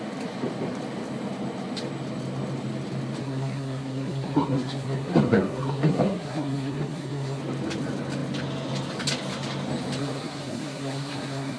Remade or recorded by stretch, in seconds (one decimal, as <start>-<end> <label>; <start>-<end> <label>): 0.0-3.2 recorded; 3.2-7.4 remade; 7.4-10.0 recorded; 10.0-11.6 remade